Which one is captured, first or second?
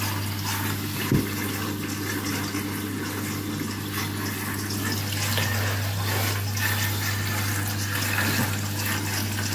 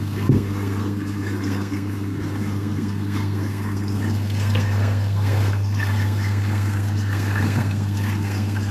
first